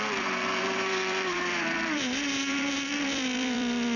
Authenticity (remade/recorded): remade